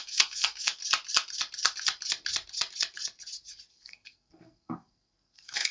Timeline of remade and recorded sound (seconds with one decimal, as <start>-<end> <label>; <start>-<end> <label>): 0.0-0.8 remade; 0.8-3.7 recorded; 3.7-5.7 remade